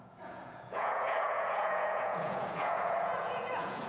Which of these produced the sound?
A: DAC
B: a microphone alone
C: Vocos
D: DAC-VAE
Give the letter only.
C